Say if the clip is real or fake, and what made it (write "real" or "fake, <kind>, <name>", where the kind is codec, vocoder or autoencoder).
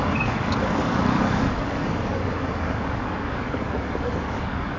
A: fake, codec, DAC